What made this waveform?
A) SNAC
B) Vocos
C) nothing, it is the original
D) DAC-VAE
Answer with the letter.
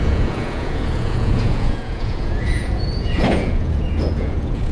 B